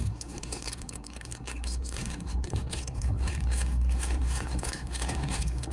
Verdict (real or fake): fake